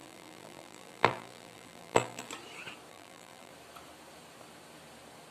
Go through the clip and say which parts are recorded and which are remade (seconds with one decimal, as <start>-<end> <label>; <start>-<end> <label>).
0.0-2.3 remade; 2.3-2.9 recorded; 2.9-3.5 remade; 3.5-5.3 recorded